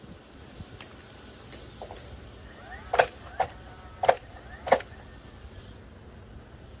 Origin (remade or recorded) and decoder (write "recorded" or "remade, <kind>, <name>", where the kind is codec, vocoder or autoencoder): recorded